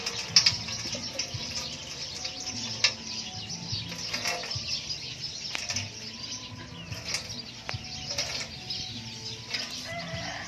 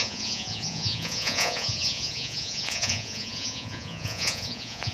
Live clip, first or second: first